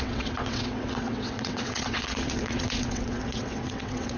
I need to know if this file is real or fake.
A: fake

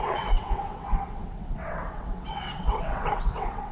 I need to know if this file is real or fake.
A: fake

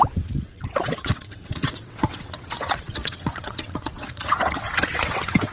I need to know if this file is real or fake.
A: fake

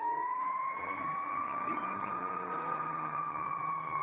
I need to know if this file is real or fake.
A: fake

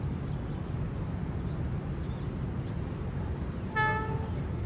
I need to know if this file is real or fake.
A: real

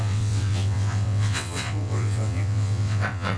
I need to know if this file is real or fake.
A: fake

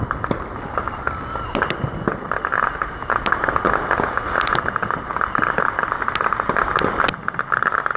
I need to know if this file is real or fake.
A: real